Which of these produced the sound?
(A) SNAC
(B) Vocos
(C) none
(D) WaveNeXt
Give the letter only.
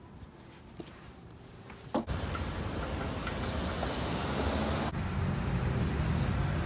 C